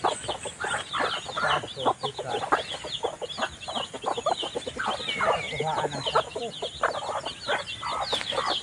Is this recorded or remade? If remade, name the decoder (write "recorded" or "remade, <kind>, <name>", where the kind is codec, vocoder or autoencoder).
recorded